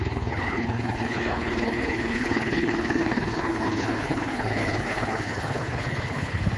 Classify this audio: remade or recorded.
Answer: remade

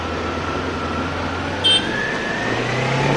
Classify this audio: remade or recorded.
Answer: recorded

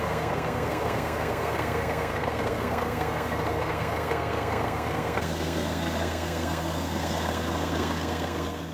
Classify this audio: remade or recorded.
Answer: remade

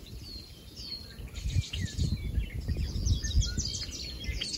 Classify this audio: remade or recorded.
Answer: recorded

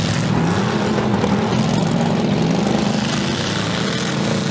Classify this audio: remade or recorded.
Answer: recorded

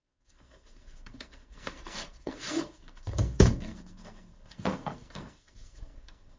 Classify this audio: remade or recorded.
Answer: remade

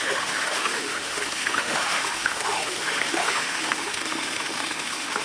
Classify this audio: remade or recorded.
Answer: remade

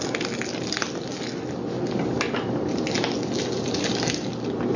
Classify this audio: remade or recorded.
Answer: recorded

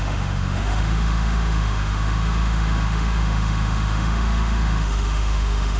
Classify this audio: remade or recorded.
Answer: remade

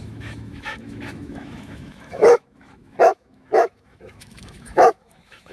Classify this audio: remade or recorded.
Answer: remade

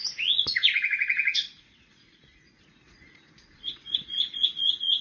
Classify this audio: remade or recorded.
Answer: remade